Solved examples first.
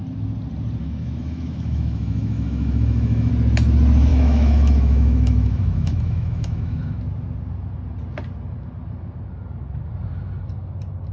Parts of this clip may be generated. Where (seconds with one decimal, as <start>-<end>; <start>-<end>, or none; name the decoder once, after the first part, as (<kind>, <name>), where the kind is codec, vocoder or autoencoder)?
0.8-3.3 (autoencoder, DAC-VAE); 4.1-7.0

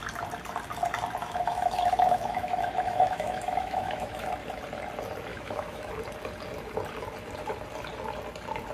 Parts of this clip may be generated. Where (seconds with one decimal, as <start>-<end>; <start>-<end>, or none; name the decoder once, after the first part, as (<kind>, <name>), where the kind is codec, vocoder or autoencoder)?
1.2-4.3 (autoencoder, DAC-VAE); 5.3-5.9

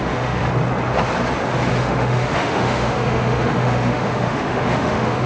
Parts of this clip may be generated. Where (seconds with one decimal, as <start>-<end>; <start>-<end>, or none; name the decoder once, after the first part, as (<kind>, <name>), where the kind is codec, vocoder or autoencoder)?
0.0-0.4 (autoencoder, DAC-VAE); 1.7-5.3